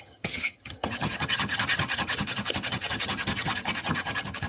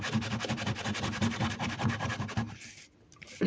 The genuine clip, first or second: second